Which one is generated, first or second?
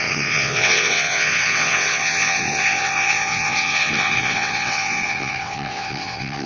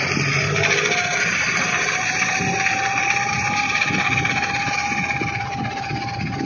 first